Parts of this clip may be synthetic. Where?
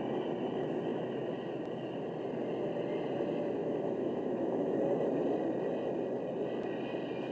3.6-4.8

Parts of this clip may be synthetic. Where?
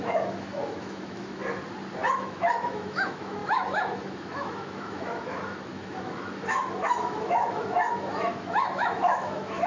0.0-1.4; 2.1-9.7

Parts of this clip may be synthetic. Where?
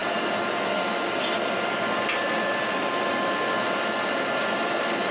none